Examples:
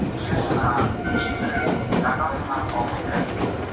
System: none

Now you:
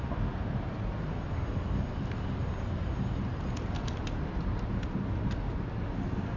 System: none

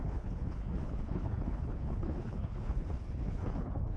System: codec, HILCodec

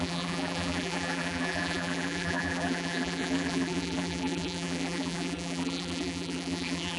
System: vocoder, BigVGAN v2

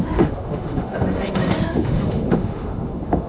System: autoencoder, DAC-VAE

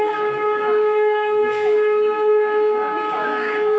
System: codec, DAC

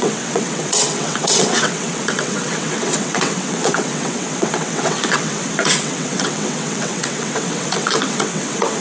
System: vocoder, WaveNeXt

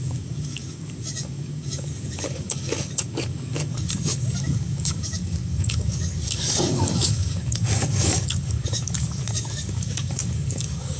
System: codec, DAC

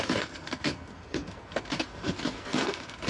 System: codec, SNAC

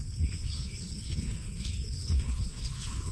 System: codec, HILCodec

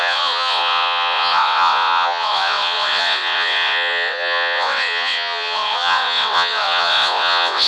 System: vocoder, WaveNeXt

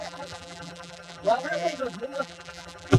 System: vocoder, BigVGAN v2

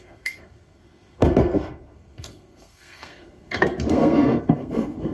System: codec, SNAC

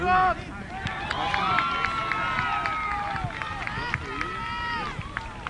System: none